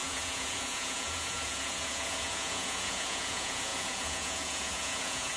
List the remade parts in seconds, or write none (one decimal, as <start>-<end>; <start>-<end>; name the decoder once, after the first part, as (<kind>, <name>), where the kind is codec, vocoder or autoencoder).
0.0-5.4 (vocoder, Vocos)